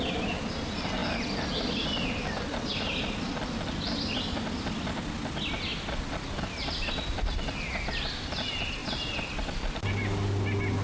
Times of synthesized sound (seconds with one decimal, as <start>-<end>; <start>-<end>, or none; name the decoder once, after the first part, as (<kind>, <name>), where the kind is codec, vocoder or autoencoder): none